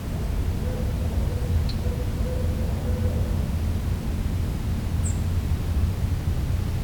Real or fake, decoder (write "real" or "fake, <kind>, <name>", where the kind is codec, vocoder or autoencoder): real